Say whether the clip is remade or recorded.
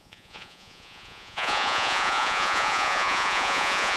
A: remade